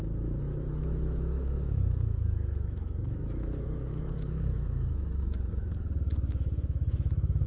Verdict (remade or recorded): remade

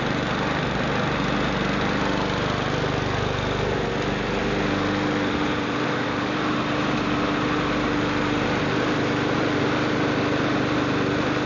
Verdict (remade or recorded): recorded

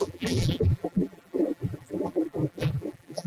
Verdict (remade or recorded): remade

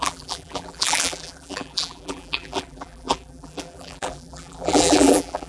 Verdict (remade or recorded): remade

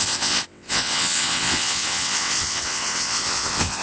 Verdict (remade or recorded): remade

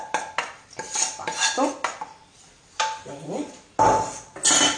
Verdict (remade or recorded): recorded